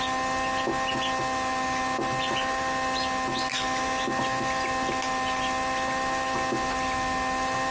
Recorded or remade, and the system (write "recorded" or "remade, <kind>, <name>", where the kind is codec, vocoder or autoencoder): recorded